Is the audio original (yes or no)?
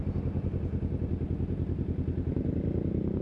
yes